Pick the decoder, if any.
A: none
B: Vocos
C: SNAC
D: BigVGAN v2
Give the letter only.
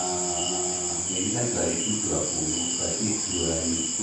D